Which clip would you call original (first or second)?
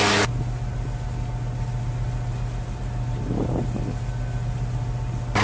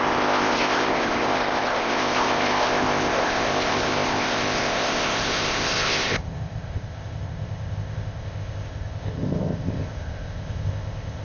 first